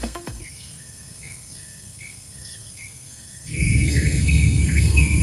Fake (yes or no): yes